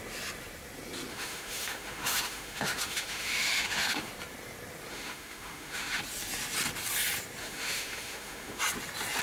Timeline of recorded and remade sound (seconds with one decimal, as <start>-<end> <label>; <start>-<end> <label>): 0.0-1.1 recorded; 1.1-4.1 remade; 4.1-4.9 recorded; 4.9-6.0 remade; 6.0-7.4 recorded; 7.4-8.6 remade; 8.6-9.2 recorded